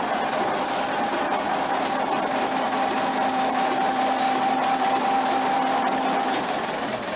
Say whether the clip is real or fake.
real